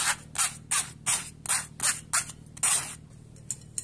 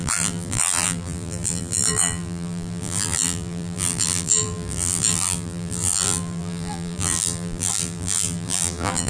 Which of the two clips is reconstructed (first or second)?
second